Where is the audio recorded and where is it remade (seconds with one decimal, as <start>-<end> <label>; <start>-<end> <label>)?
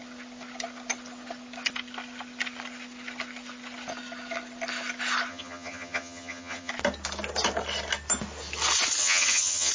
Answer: 0.0-5.3 recorded; 5.3-6.7 remade; 6.7-9.0 recorded; 9.0-9.7 remade